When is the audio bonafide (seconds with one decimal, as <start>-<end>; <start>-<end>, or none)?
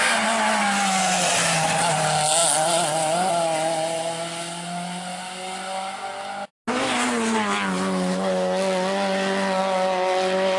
0.0-2.4; 3.3-10.6